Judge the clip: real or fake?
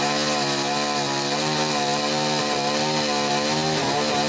real